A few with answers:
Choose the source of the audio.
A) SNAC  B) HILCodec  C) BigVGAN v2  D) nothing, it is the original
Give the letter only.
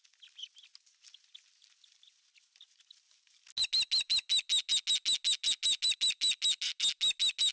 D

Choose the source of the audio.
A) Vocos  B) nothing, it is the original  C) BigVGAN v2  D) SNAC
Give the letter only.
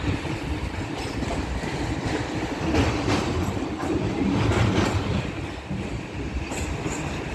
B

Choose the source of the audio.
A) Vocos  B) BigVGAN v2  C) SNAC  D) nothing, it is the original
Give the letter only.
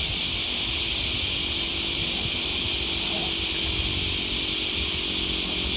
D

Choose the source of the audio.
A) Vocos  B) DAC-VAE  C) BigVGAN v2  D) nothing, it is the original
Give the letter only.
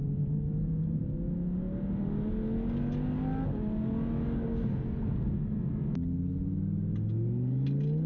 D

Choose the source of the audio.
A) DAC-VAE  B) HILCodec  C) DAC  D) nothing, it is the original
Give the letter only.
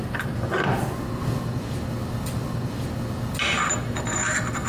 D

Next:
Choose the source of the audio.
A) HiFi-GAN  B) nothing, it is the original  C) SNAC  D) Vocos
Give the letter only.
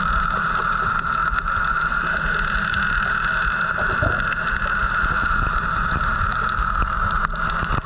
B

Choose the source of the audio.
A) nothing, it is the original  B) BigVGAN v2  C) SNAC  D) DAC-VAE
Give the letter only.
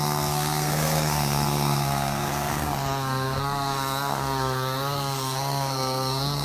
C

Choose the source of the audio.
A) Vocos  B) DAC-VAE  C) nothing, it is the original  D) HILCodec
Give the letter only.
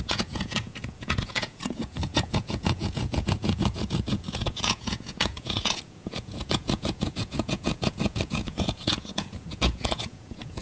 A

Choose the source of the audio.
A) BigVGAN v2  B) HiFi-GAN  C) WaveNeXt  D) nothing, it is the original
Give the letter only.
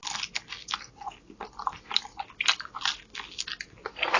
D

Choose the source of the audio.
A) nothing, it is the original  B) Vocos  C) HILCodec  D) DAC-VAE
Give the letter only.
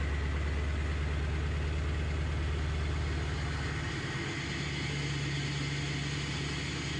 A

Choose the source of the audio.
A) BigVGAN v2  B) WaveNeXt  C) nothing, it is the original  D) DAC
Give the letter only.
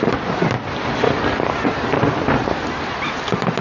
C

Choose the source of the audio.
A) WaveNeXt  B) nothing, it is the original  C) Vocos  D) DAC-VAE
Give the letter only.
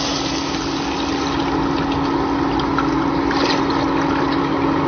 B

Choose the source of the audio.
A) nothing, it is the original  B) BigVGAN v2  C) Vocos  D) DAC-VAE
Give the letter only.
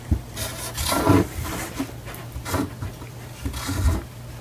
A